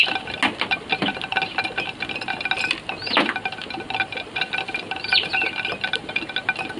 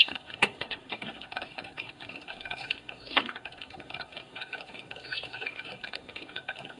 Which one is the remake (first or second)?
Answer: second